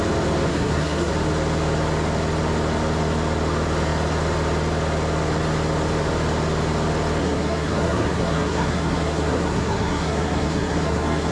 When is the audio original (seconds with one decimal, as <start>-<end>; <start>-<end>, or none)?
0.0-0.5; 1.1-7.2